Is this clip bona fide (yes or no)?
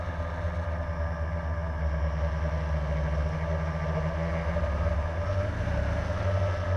yes